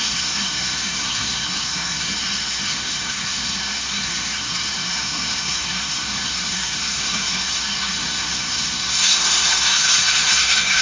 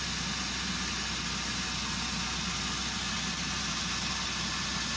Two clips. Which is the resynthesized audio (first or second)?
first